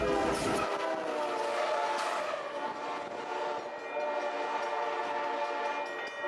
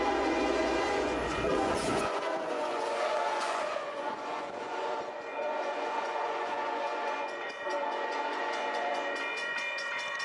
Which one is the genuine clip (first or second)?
first